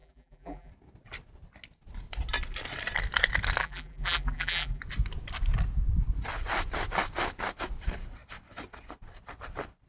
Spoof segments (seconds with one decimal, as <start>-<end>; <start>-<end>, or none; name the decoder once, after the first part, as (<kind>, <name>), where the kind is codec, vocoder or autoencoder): 0.0-0.7 (vocoder, BigVGAN v2); 3.6-4.8